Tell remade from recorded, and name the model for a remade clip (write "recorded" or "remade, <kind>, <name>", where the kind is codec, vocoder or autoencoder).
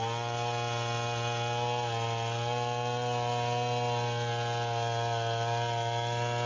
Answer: recorded